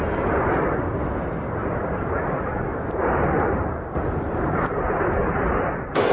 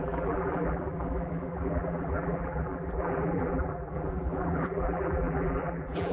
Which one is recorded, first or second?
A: first